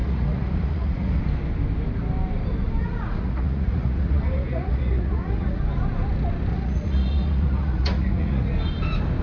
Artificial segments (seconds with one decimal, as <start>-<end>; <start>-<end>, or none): 0.0-1.2; 2.8-5.6; 6.5-8.5